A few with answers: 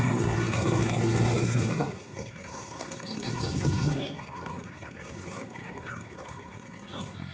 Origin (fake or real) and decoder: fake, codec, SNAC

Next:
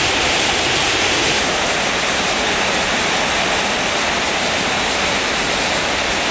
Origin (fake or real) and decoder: real